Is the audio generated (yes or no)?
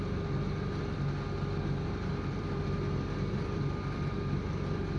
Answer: no